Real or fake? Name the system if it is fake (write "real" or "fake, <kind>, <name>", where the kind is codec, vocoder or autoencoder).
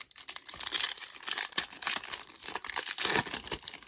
real